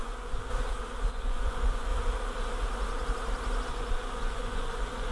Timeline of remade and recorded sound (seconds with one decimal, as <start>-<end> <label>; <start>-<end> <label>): 0.0-0.5 remade; 0.5-1.1 recorded; 1.1-1.9 remade; 1.9-3.7 recorded; 3.7-5.1 remade